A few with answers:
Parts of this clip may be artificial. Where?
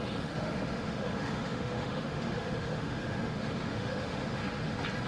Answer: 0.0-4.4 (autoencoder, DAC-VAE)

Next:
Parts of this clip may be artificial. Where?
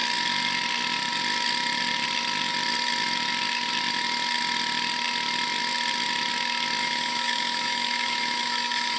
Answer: 6.8-9.0 (autoencoder, DAC-VAE)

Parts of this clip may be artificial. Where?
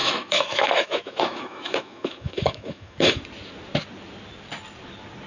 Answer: 0.0-3.2 (autoencoder, DAC-VAE)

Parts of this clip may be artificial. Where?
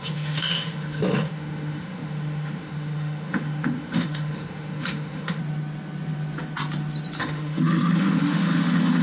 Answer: 0.0-5.4 (autoencoder, DAC-VAE); 7.2-9.0